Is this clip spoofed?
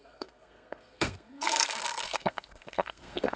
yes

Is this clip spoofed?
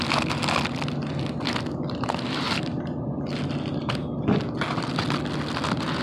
no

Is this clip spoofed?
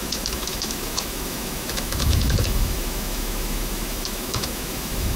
yes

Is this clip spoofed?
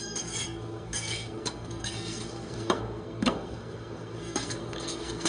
yes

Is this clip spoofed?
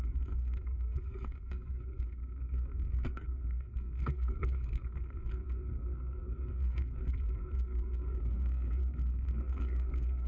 yes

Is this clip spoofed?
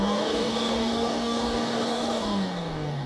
yes